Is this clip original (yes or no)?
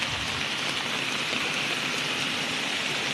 yes